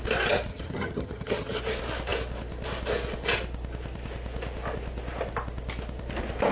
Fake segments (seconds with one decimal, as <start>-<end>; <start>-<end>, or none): 0.5-1.6

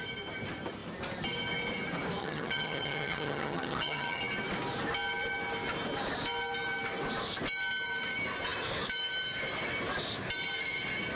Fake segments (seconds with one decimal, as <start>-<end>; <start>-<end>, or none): 2.2-4.2

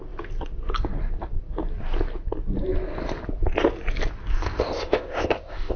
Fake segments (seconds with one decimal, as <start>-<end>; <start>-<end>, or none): 4.3-5.8

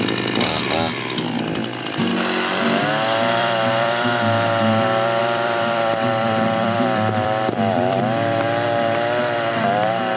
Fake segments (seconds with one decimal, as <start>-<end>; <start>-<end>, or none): 3.4-4.1; 5.2-8.0

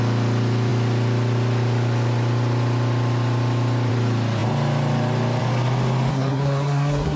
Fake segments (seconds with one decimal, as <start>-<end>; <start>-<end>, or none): 6.1-7.2

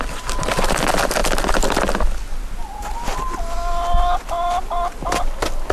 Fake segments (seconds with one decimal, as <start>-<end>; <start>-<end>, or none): none

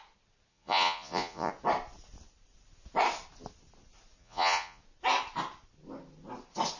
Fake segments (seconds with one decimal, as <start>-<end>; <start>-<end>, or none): 0.5-1.5; 4.2-4.8

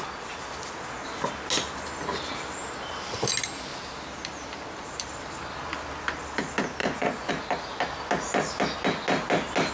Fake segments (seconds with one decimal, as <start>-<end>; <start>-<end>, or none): 6.8-7.3